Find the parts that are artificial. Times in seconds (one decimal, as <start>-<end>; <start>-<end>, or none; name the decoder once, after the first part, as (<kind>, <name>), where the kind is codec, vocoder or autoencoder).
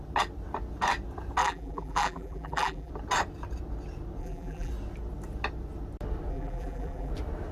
1.4-2.9 (vocoder, BigVGAN v2); 4.2-4.7; 6.3-7.1